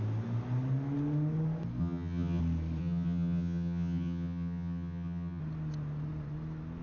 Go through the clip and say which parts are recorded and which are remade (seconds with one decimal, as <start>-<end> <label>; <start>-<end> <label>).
0.0-1.8 recorded; 1.8-2.4 remade; 2.4-2.8 recorded; 2.8-5.4 remade; 5.4-6.8 recorded